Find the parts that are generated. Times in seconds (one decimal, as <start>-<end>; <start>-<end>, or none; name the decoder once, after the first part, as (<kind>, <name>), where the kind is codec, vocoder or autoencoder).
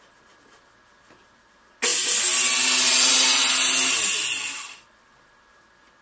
none